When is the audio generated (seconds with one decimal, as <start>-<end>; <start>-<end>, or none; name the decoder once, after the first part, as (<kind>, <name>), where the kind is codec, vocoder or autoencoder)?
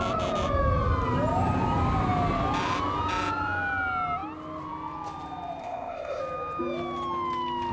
5.6-6.2 (codec, ZipCodec)